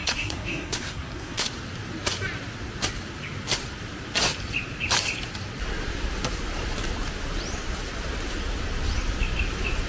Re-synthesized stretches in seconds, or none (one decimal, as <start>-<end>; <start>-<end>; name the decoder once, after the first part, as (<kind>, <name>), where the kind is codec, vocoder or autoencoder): 0.0-1.5 (codec, SNAC)